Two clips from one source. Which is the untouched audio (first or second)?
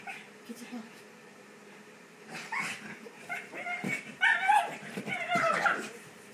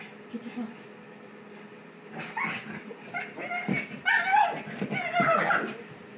second